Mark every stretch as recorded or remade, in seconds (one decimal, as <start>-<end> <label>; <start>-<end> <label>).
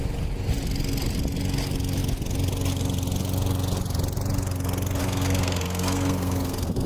0.0-5.0 recorded; 5.0-6.9 remade